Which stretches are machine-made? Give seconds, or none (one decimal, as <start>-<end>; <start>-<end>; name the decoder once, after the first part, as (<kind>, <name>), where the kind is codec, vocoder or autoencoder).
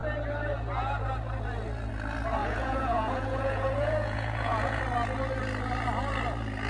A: 2.4-4.8 (vocoder, Vocos)